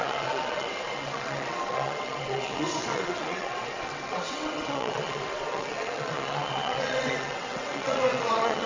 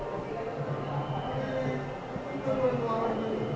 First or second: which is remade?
first